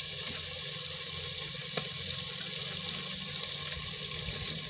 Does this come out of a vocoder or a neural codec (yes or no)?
no